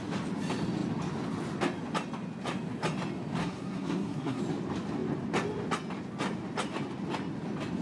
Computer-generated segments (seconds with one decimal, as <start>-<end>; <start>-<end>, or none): 3.4-4.4